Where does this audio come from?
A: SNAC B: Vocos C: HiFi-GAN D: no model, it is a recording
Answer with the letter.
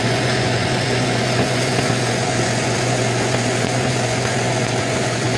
B